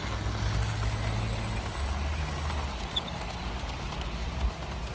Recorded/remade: recorded